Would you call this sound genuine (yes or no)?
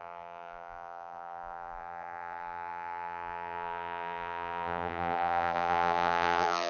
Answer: no